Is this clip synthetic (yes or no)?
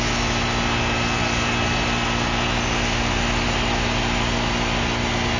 no